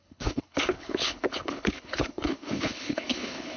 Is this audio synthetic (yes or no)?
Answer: yes